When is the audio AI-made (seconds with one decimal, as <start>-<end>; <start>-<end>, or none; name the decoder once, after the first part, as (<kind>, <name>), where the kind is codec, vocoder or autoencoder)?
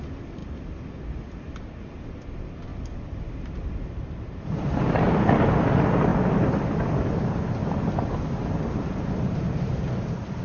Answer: 2.7-5.4 (vocoder, BigVGAN v2)